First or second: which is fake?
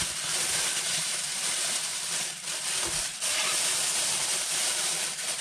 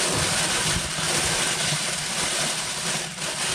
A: first